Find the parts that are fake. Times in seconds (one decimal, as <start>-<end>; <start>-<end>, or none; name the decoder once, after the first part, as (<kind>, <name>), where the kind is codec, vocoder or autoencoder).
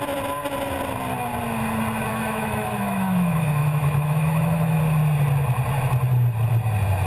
2.1-4.8 (autoencoder, DAC-VAE)